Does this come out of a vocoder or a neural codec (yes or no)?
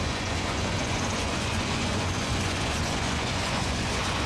yes